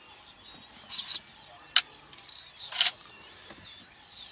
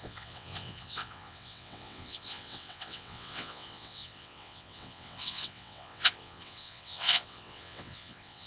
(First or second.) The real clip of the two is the first